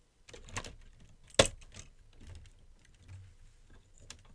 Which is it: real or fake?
real